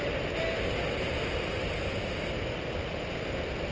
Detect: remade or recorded recorded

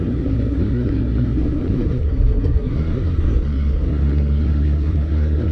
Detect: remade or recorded remade